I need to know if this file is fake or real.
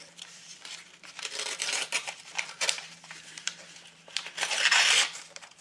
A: fake